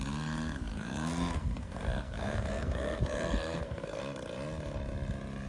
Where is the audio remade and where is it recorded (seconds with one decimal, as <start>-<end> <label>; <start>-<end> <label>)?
0.0-0.7 recorded; 0.7-4.0 remade; 4.0-5.5 recorded